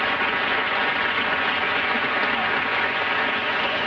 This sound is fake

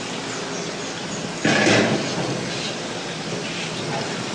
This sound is real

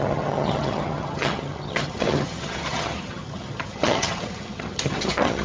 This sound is fake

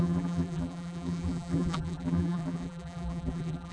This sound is fake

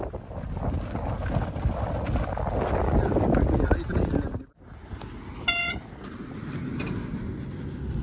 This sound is real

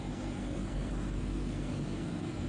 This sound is fake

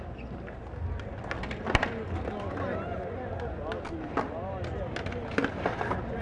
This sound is real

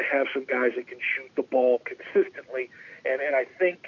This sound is real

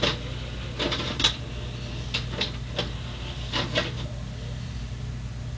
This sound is real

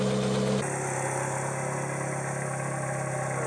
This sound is real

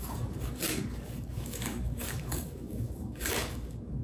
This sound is fake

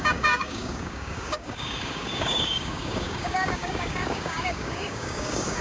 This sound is fake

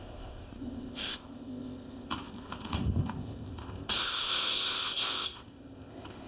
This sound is fake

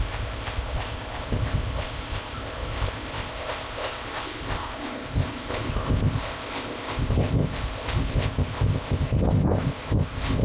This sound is fake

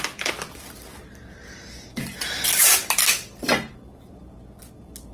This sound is real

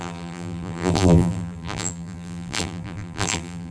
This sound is fake